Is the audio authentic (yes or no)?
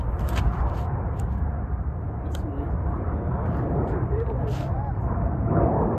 no